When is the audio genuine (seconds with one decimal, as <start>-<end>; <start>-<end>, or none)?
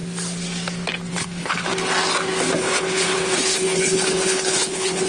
0.0-1.1; 1.7-2.6